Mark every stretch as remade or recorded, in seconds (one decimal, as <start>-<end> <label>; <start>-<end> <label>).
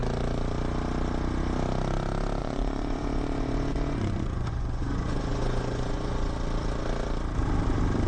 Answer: 0.0-2.4 recorded; 2.4-6.3 remade; 6.3-8.1 recorded